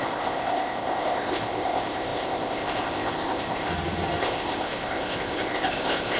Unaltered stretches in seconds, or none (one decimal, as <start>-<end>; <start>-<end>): 3.7-4.2